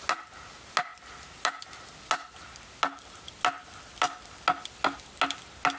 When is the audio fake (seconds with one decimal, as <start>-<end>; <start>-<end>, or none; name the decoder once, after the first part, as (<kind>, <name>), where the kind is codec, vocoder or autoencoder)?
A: none